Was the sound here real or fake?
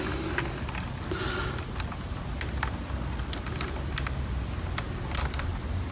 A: real